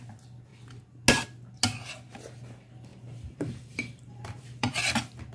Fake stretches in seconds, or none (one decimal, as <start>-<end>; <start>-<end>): 2.9-4.7